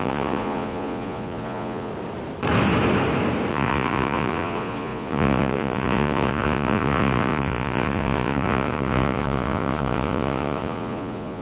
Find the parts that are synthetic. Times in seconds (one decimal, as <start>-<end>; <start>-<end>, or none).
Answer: 0.0-1.9; 3.5-11.4